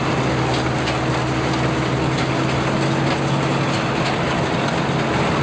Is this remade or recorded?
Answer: recorded